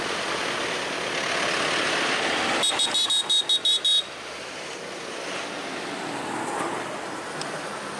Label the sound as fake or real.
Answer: real